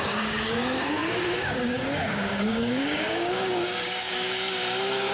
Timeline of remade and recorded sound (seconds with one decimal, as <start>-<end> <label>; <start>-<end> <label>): 0.0-5.1 remade